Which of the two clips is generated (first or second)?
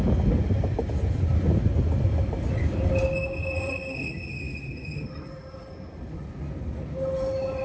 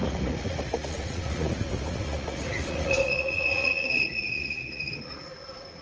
second